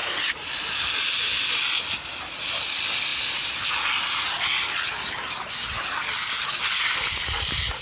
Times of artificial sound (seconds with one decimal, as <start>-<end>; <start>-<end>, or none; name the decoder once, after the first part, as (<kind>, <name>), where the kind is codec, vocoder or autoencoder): none